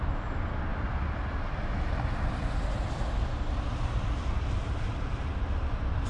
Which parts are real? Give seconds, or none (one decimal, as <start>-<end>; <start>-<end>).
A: 0.0-6.1